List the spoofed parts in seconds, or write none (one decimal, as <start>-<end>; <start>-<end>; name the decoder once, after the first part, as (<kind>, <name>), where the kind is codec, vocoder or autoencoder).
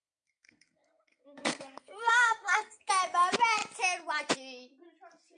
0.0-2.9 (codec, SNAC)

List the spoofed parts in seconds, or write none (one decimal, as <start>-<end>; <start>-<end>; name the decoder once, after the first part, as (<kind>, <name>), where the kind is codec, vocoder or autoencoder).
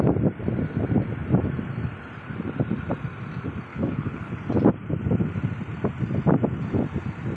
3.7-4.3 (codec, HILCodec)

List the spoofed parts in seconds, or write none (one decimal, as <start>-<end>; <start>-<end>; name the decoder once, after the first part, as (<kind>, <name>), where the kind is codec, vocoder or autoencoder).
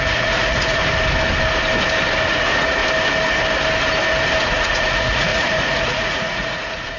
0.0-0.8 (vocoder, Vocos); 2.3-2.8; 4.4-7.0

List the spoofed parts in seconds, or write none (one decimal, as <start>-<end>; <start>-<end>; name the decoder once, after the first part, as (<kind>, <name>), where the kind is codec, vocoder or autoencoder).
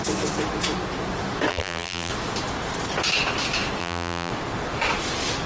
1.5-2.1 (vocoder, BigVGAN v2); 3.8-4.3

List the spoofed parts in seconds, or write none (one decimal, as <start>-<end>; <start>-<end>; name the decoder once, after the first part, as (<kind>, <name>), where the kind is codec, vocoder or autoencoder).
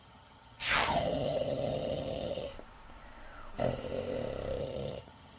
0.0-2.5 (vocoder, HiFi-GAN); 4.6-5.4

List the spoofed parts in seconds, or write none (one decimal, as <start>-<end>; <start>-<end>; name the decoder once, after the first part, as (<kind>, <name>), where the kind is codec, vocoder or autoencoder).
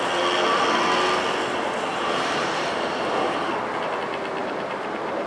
1.9-3.5 (vocoder, BigVGAN v2); 4.4-5.3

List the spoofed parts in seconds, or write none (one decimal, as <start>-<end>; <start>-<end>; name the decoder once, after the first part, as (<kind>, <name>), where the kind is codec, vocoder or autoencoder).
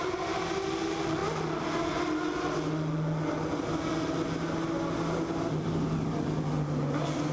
none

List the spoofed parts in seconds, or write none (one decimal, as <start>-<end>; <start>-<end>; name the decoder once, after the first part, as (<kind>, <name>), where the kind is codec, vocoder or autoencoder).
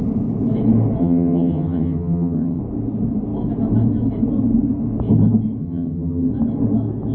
1.0-2.6 (vocoder, HiFi-GAN); 5.6-6.3